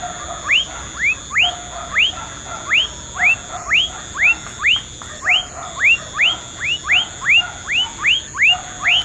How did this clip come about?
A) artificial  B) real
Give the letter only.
B